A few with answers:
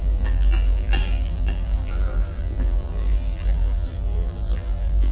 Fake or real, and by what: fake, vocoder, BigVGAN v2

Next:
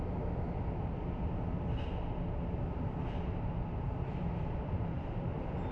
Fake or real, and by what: fake, vocoder, BigVGAN v2